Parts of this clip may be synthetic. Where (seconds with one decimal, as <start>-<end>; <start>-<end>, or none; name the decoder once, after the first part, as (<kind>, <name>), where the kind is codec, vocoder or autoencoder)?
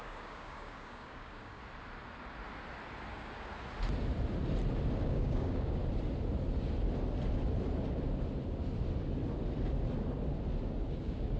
0.0-1.6 (codec, DAC); 3.1-3.5; 5.0-5.8; 11.0-11.4